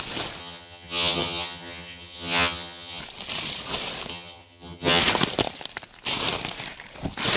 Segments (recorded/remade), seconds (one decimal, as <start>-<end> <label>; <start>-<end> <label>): 0.0-0.4 recorded; 0.4-3.0 remade; 3.0-4.1 recorded; 4.1-5.0 remade; 5.0-7.4 recorded